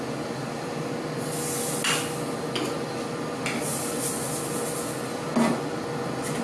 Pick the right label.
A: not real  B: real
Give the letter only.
B